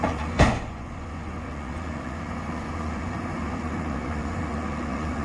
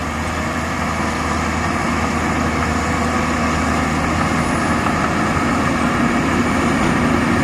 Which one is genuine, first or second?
second